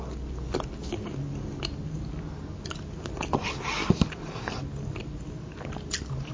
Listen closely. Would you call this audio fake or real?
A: real